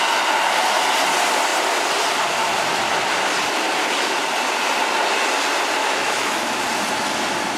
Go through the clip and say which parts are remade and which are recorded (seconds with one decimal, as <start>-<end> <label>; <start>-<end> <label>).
0.0-5.8 recorded; 5.8-6.6 remade; 6.6-7.6 recorded